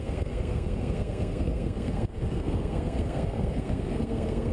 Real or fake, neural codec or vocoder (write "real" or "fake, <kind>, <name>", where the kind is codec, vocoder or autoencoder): fake, codec, SNAC